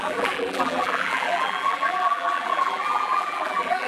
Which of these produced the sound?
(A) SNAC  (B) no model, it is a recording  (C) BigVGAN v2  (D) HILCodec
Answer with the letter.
C